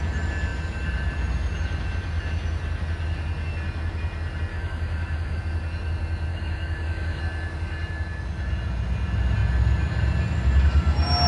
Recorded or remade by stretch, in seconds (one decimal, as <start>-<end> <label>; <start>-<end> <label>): 0.0-4.5 recorded; 4.5-5.4 remade; 5.4-6.3 recorded; 6.3-7.2 remade; 7.2-11.3 recorded